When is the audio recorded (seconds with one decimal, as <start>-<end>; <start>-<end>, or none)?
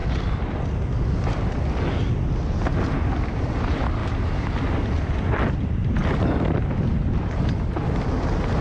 0.0-3.4; 4.0-4.8